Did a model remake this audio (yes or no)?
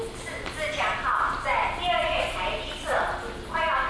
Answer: no